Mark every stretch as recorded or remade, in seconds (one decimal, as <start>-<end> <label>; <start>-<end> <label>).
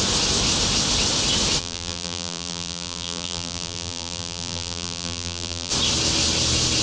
0.0-1.6 recorded; 1.6-5.7 remade; 5.7-6.8 recorded